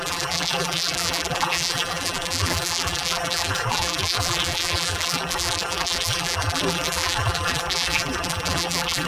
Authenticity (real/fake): fake